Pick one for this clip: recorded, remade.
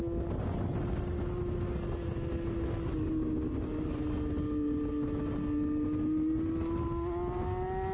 recorded